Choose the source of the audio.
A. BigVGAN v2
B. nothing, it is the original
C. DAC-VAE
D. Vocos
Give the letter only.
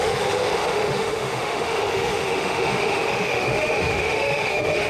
C